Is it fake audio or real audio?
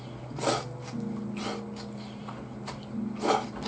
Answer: real